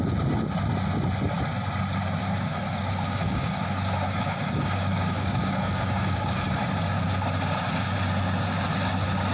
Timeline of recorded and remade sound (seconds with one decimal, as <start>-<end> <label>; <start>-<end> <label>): 0.0-2.2 recorded; 2.2-6.6 remade; 6.6-9.3 recorded